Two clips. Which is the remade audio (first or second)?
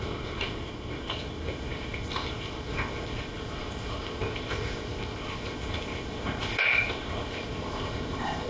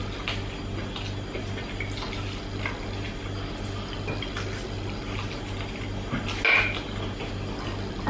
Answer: first